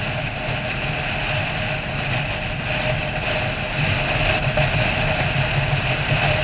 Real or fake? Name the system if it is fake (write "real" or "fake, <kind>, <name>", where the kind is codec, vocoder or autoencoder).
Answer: real